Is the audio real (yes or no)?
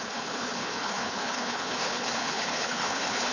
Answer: no